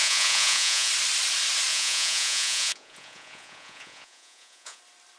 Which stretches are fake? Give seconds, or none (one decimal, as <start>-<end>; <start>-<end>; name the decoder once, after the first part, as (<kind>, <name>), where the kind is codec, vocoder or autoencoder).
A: 0.0-0.9 (vocoder, Vocos); 1.7-4.8